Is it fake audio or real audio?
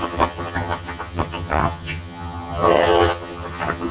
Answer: fake